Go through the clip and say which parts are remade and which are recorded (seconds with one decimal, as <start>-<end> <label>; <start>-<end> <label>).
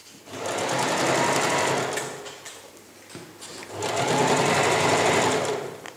0.0-6.0 recorded